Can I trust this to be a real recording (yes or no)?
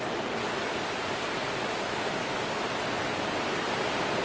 yes